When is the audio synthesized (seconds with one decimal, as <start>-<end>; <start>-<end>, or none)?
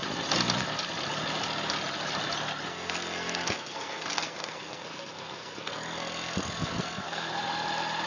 2.7-7.3